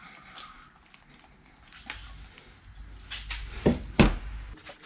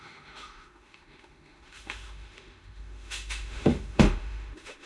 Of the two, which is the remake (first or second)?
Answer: second